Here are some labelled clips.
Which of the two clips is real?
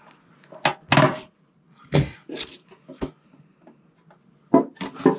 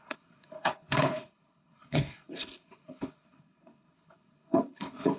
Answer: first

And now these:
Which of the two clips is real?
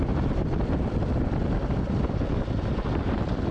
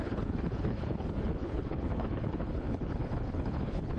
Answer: first